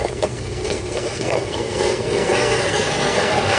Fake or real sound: fake